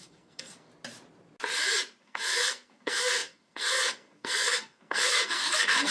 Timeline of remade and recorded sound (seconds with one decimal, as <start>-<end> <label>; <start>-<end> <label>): 0.0-0.7 remade; 0.7-2.0 recorded; 2.0-5.9 remade